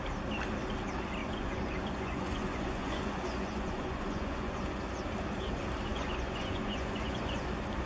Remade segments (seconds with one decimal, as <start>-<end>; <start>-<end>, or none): 1.2-4.8; 5.9-7.5